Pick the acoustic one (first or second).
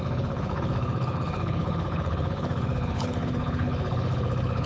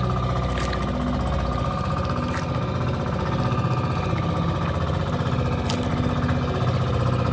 second